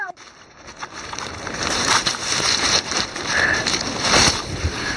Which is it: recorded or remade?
remade